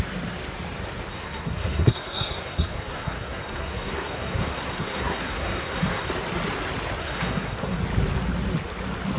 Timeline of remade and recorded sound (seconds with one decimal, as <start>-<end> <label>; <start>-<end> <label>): 0.0-1.1 recorded; 1.1-6.1 remade; 6.1-7.0 recorded; 7.0-7.8 remade; 7.8-9.2 recorded